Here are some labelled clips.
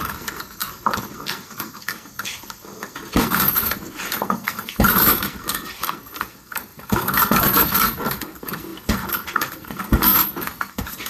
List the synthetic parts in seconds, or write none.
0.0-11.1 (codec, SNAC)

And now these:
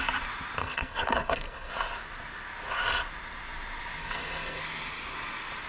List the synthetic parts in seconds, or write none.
0.6-1.7 (codec, SNAC); 4.0-4.6

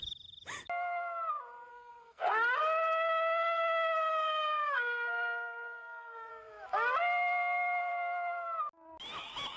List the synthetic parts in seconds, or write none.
1.7-2.6 (codec, SNAC); 4.1-6.3

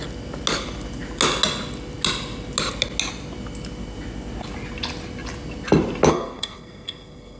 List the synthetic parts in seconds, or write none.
6.1-7.4 (codec, SNAC)

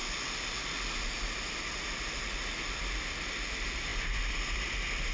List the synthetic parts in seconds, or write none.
none